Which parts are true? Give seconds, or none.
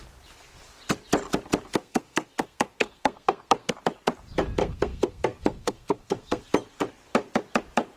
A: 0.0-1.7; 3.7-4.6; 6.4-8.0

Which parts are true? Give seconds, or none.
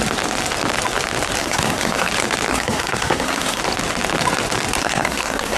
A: 0.0-1.4; 2.1-2.5; 3.6-4.8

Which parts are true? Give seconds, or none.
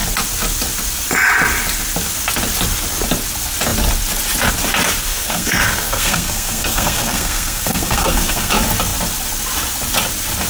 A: 0.0-5.1; 8.5-10.5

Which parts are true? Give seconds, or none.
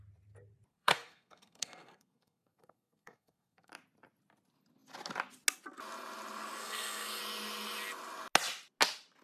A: 0.0-0.7; 3.7-6.6; 7.2-9.2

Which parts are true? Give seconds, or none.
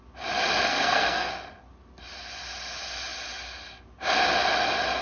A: 0.0-0.7; 1.3-5.0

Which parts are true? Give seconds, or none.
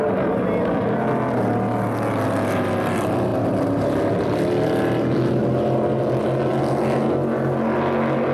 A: 0.0-8.3